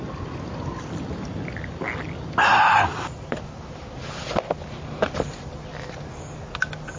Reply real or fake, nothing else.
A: real